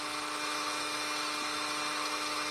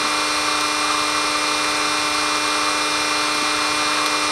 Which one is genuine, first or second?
second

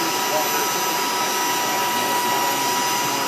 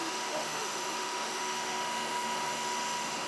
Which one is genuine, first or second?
first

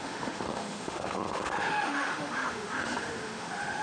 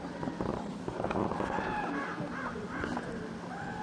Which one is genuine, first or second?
second